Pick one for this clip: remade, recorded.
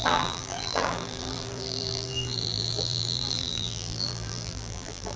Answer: remade